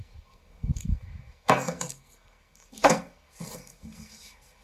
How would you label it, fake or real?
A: fake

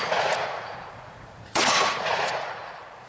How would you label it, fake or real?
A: fake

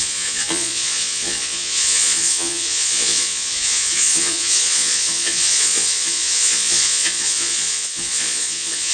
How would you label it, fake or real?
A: fake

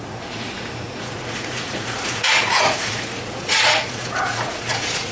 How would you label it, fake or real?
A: fake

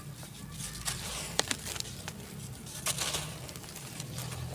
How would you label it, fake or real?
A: fake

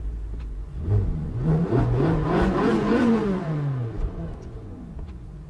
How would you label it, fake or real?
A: fake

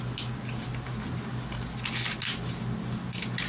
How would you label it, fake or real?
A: real